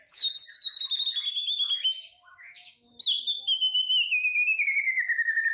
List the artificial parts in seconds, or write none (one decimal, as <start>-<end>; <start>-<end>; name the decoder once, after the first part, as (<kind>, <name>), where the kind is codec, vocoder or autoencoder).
1.3-4.6 (autoencoder, DAC-VAE)